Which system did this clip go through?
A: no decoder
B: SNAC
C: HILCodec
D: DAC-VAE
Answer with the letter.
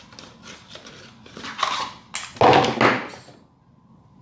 A